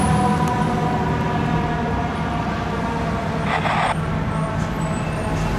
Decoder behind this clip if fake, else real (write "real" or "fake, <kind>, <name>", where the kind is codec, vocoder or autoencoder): real